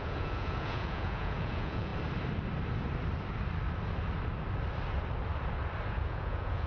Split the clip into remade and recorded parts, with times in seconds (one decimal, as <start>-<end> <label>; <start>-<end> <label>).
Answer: 0.0-1.9 remade; 1.9-5.9 recorded; 5.9-6.7 remade